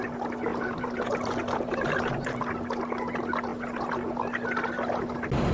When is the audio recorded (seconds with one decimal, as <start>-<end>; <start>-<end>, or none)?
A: 0.0-0.5; 2.4-5.5